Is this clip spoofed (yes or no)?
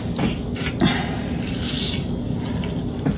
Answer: no